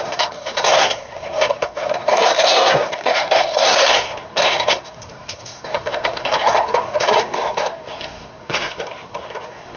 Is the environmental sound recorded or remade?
remade